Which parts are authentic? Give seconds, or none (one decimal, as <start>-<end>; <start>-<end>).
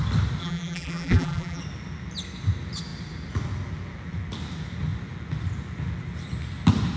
0.0-0.4; 1.6-7.0